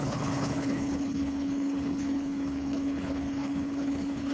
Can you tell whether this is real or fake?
fake